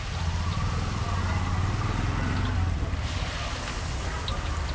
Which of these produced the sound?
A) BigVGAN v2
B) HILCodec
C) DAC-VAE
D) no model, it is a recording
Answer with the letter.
D